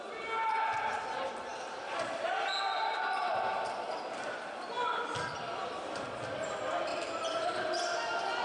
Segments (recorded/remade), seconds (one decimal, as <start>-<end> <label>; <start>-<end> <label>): 0.0-1.5 recorded; 1.5-6.5 remade; 6.5-6.9 recorded; 6.9-7.5 remade; 7.5-8.4 recorded